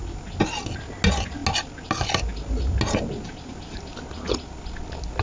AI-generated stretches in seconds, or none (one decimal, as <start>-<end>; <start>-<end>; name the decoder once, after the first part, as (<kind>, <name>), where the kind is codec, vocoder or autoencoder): none